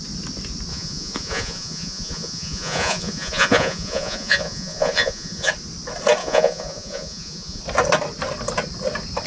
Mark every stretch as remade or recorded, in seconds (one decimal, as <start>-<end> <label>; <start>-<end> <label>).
0.0-0.7 recorded; 0.7-5.5 remade; 5.5-6.2 recorded; 6.2-7.6 remade; 7.6-9.3 recorded